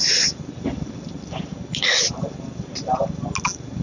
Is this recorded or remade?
recorded